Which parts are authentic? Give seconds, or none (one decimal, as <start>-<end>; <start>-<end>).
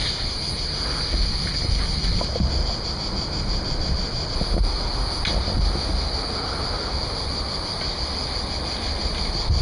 0.0-9.6